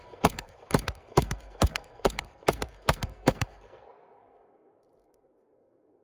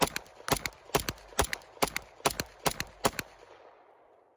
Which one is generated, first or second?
first